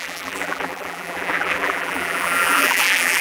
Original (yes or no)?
no